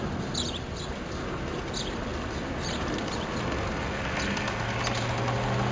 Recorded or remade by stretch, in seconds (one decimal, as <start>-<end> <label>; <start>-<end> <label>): 0.0-5.7 recorded

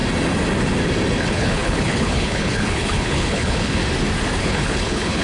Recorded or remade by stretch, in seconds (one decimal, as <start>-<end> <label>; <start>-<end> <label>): 0.0-1.2 recorded; 1.2-3.8 remade; 3.8-4.4 recorded; 4.4-5.2 remade

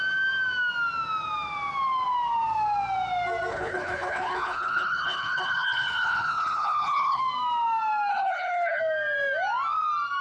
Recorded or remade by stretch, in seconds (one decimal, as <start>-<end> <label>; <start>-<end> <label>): 0.0-3.5 recorded; 3.5-7.2 remade; 7.2-8.1 recorded; 8.1-8.8 remade; 8.8-10.2 recorded